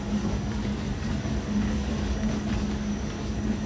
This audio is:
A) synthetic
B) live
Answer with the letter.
A